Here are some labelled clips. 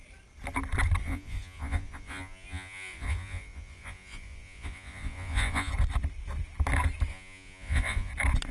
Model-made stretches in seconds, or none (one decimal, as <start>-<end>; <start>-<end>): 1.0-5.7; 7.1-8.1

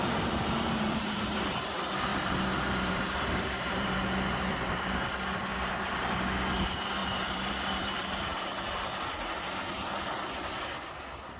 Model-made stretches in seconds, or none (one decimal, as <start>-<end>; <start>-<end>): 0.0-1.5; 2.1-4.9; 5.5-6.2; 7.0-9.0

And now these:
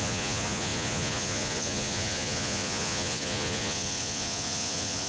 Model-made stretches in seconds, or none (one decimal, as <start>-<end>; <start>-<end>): 0.0-5.1

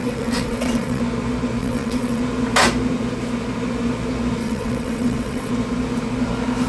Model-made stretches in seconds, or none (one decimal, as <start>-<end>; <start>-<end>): 0.0-1.0; 1.6-2.2; 4.4-5.5

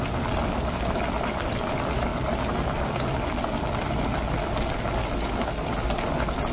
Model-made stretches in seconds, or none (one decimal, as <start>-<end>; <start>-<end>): none